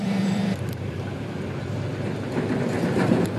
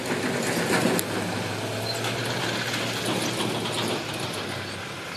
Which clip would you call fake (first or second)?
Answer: first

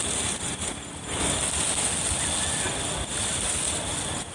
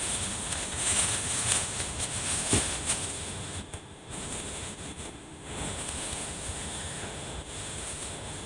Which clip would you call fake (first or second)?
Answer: second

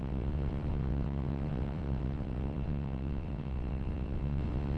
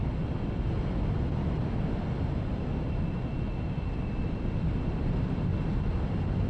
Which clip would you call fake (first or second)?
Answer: first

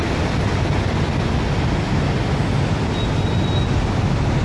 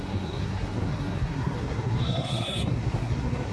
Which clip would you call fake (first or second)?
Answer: second